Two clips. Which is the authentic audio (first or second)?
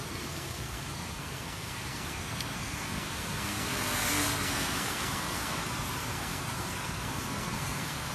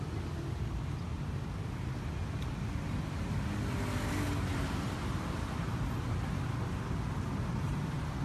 second